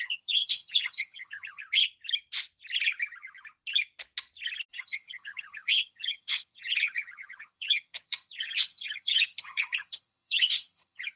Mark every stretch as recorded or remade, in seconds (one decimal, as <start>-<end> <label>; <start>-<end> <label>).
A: 0.0-1.6 remade; 1.6-4.7 recorded; 4.7-11.2 remade